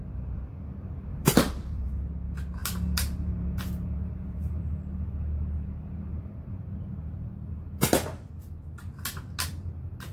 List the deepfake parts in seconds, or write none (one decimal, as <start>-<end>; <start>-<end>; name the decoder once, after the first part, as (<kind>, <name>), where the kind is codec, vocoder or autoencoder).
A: 1.1-1.9 (vocoder, BigVGAN v2); 2.6-6.5; 6.9-8.3